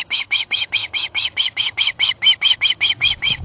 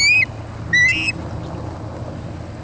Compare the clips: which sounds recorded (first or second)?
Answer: second